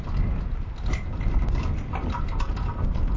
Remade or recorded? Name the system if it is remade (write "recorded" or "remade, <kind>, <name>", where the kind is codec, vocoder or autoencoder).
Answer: recorded